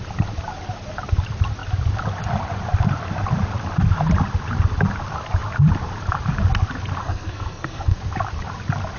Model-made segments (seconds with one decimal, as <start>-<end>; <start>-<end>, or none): 7.0-8.0